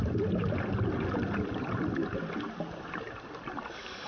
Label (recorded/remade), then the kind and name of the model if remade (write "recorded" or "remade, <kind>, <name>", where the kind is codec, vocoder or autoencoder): recorded